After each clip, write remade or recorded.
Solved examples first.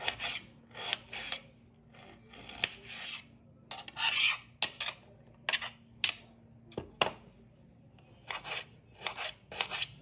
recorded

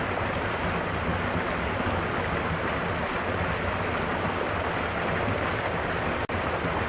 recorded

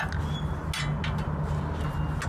recorded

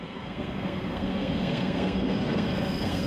remade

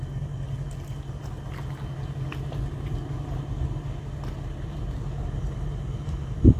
recorded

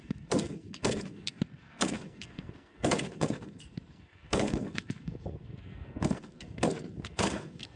remade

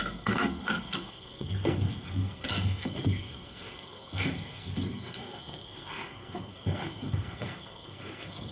remade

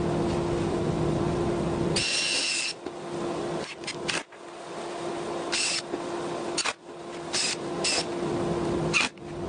recorded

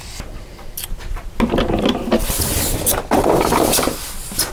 recorded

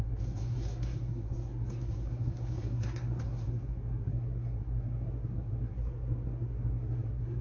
remade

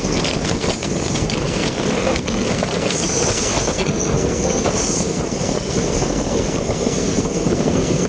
remade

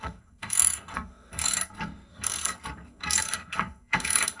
remade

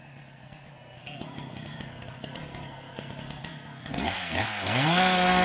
remade